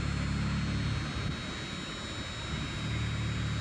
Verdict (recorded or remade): recorded